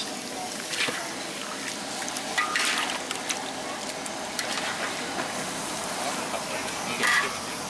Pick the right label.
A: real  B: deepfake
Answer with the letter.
A